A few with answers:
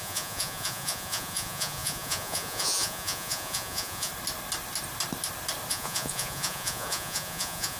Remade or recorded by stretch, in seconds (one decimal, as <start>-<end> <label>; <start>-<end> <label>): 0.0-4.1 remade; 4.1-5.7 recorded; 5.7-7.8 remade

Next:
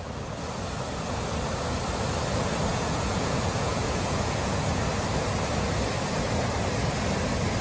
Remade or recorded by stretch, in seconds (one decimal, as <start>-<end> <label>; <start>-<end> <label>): 0.0-2.7 recorded; 2.7-4.8 remade; 4.8-7.6 recorded

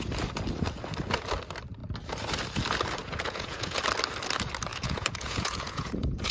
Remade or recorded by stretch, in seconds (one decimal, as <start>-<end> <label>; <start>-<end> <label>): 0.0-3.0 recorded; 3.0-3.8 remade; 3.8-4.7 recorded; 4.7-6.3 remade